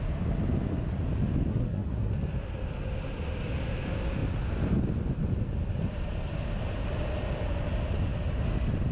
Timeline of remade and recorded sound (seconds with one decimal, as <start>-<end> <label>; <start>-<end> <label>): 0.0-1.5 recorded; 1.5-2.1 remade; 2.1-8.9 recorded